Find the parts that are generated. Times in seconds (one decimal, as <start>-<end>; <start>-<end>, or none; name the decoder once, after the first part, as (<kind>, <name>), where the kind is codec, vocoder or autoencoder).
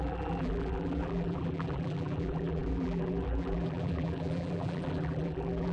0.0-5.7 (vocoder, BigVGAN v2)